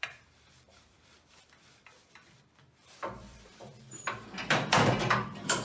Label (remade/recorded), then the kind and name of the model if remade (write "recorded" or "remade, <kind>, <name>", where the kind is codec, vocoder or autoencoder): remade, vocoder, BigVGAN v2